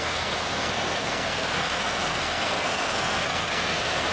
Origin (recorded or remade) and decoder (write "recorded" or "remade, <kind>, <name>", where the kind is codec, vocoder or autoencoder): remade, codec, SNAC